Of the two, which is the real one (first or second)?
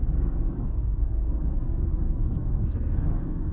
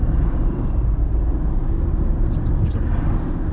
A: second